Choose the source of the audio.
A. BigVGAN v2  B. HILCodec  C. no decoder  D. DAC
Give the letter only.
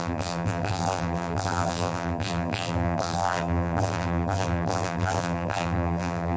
A